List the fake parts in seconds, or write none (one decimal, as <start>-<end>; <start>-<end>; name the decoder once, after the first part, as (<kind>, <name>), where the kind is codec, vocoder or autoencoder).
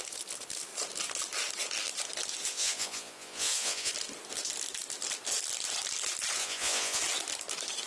2.5-3.9 (vocoder, Vocos); 6.4-7.0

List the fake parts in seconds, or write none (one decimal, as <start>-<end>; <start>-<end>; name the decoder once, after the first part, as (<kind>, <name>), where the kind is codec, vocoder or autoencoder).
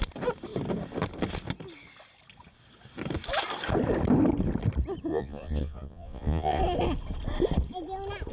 5.1-6.6 (vocoder, Vocos)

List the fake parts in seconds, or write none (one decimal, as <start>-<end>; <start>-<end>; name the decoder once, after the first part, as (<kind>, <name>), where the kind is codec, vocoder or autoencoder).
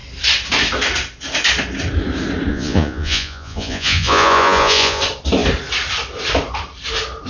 2.5-5.0 (vocoder, Vocos)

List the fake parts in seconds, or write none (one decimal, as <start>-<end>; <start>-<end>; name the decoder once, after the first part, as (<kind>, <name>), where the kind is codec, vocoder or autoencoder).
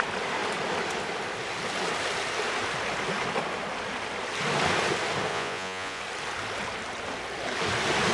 5.3-6.0 (vocoder, Vocos)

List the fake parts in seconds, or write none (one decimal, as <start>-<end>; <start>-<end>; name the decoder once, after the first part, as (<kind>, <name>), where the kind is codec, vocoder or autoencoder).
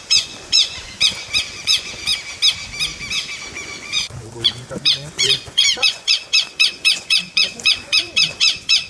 0.0-2.1 (vocoder, Vocos); 3.4-8.9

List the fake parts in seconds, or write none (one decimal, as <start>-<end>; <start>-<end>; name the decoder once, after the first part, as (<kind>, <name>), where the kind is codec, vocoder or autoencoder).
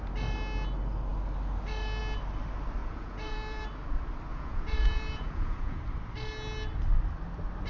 2.8-3.6 (vocoder, Vocos); 4.3-5.8